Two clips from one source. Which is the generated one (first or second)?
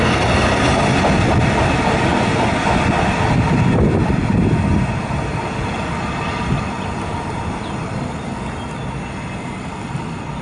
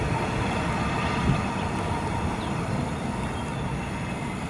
second